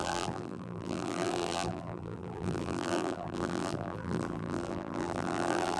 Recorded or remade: remade